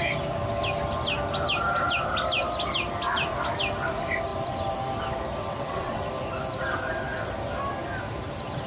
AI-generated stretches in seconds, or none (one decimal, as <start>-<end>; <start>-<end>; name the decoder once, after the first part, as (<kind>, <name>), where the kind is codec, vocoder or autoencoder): 5.4-6.0 (vocoder, WaveNeXt)